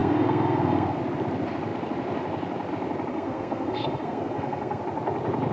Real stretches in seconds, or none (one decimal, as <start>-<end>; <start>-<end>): 1.0-3.1; 4.8-5.5